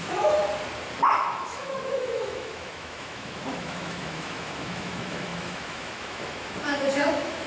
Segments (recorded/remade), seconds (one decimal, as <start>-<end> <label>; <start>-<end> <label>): 0.0-0.4 remade; 0.4-1.0 recorded; 1.0-7.5 remade